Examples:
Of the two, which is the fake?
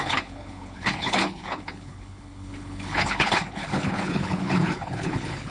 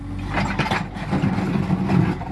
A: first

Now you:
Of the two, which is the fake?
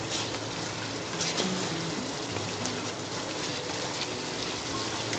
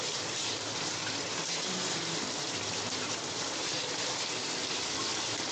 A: second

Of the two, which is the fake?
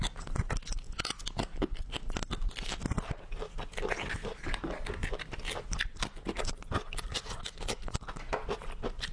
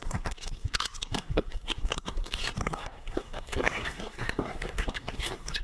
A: second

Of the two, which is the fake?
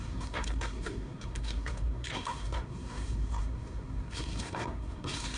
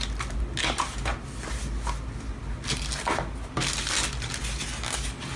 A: first